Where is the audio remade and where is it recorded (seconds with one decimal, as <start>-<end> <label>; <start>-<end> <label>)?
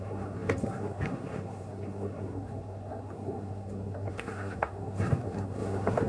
0.0-6.1 remade